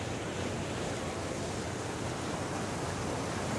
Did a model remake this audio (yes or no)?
no